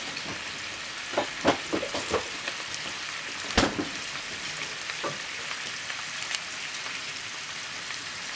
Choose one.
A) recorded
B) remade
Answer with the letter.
A